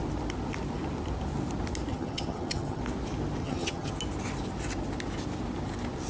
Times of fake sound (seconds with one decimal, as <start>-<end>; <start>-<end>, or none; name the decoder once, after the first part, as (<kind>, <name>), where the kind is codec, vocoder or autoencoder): 1.9-2.8 (vocoder, HiFi-GAN); 3.4-3.9